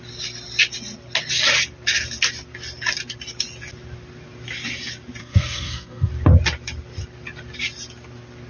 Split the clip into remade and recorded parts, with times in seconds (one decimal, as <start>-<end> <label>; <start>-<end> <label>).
0.0-5.2 recorded; 5.2-6.1 remade; 6.1-8.5 recorded